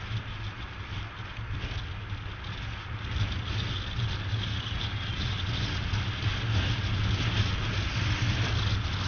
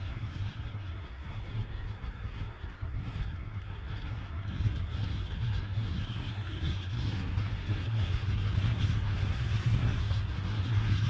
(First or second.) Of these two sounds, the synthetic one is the second